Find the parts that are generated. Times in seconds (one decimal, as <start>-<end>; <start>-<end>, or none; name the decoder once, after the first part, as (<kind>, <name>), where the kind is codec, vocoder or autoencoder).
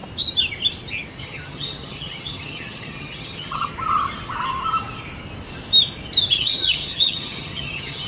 1.2-3.7 (vocoder, HiFi-GAN); 6.3-8.1